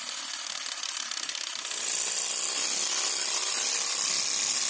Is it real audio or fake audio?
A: real